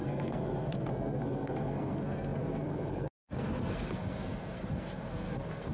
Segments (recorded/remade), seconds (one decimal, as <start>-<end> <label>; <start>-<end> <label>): 0.0-5.7 remade